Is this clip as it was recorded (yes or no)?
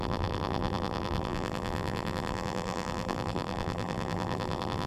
no